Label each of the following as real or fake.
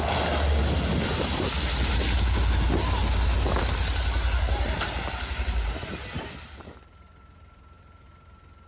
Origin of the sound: real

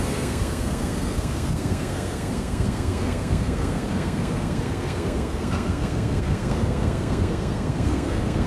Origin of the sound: fake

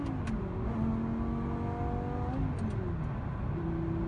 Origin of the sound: real